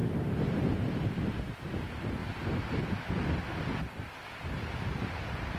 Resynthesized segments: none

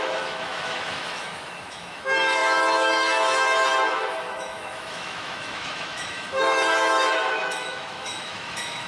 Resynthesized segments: 0.0-8.9

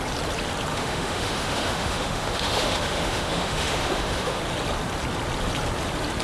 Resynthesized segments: 0.7-4.4

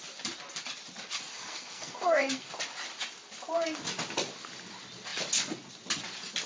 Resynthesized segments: 1.3-2.5

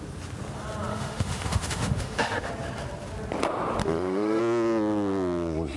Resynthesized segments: 0.9-2.5; 3.8-4.4

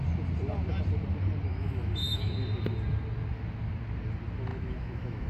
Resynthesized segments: 1.5-2.3; 4.5-5.3

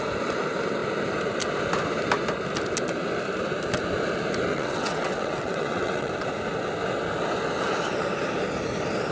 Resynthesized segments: 4.5-6.1

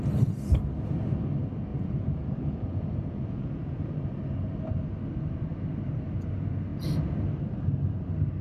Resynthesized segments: 1.7-3.9